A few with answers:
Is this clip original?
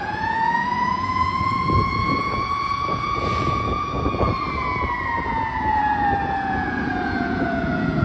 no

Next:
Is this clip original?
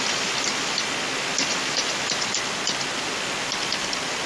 yes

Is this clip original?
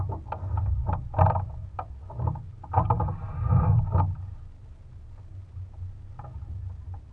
yes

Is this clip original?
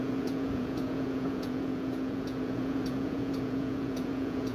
no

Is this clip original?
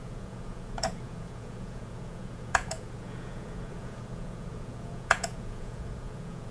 no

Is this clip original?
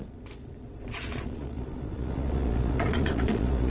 no